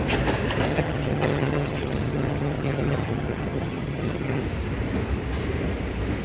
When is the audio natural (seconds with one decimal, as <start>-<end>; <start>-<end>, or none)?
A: 0.0-0.7; 4.4-6.2